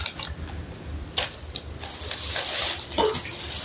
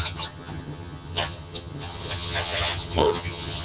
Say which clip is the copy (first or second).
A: second